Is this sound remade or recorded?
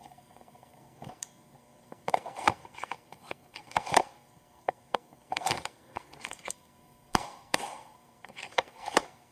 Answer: remade